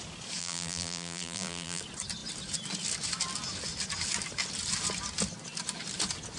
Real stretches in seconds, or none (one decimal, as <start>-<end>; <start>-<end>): 0.0-0.4; 1.8-6.4